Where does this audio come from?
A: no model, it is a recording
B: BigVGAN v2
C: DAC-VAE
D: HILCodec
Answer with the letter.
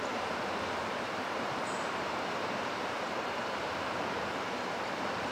B